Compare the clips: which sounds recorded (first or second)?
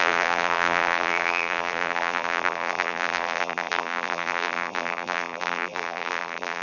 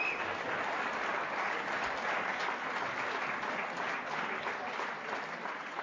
second